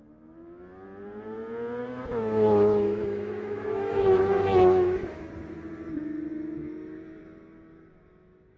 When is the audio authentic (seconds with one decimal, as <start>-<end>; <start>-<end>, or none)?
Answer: 0.0-1.8; 5.3-8.6